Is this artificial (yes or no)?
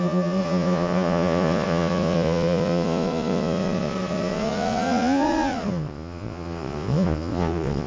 yes